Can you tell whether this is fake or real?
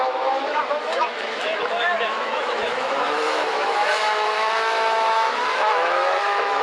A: fake